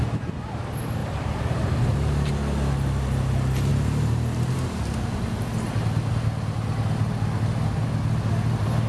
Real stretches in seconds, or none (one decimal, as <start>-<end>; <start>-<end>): 0.0-1.0; 2.3-3.7; 6.1-8.9